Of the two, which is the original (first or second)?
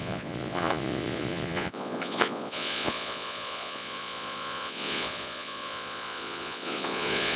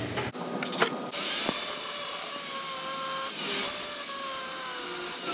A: second